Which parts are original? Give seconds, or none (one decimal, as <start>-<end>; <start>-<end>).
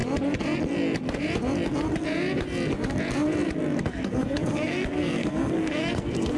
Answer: 0.0-3.8